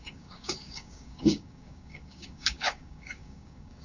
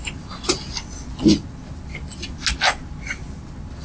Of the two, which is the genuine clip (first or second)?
second